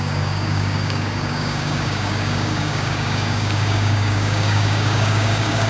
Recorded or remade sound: remade